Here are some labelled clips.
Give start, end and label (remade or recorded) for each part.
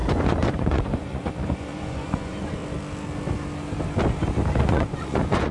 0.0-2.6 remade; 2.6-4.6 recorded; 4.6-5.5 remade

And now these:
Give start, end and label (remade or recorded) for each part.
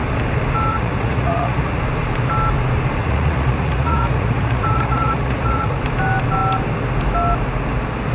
0.0-0.7 recorded; 0.7-1.8 remade; 1.8-3.0 recorded; 3.0-5.8 remade; 5.8-8.1 recorded